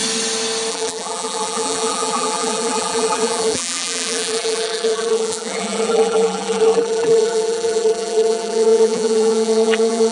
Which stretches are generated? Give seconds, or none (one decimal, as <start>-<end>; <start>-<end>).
0.7-10.1